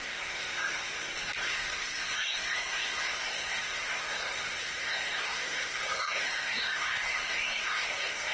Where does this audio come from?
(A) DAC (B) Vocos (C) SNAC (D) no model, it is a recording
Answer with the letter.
C